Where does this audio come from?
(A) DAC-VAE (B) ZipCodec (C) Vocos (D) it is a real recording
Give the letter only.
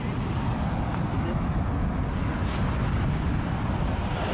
D